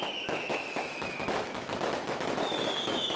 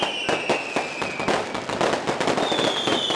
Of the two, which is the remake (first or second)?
first